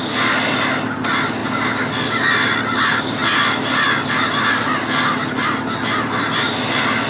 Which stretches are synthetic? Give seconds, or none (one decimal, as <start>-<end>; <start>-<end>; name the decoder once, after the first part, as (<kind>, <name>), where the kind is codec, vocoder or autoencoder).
none